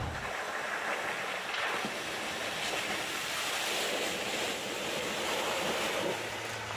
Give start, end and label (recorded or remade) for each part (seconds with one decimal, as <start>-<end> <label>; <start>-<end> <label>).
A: 0.0-6.8 recorded

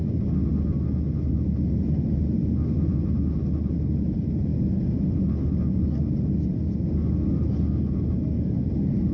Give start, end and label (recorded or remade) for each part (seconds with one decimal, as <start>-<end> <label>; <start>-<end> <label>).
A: 0.0-9.1 recorded

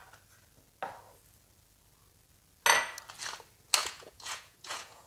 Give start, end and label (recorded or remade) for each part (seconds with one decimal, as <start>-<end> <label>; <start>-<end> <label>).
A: 0.0-3.8 recorded; 3.8-5.1 remade

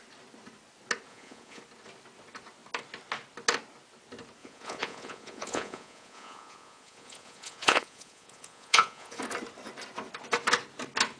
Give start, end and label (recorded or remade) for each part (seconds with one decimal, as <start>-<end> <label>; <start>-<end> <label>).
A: 0.0-1.1 recorded; 1.1-1.6 remade; 1.6-4.4 recorded; 4.4-9.2 remade; 9.2-11.2 recorded

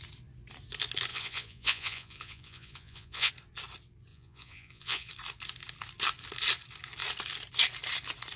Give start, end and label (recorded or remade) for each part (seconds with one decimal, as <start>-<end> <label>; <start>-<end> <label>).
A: 0.0-1.1 recorded; 1.1-3.3 remade; 3.3-4.1 recorded; 4.1-5.1 remade; 5.1-8.4 recorded

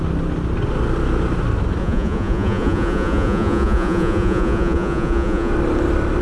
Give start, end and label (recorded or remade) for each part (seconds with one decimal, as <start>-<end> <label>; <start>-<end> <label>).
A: 0.0-1.8 recorded; 1.8-5.5 remade; 5.5-6.2 recorded